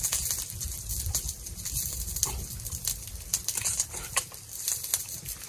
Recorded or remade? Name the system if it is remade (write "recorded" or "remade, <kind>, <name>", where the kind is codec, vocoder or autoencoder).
recorded